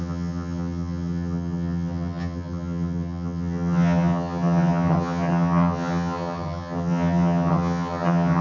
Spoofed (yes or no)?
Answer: yes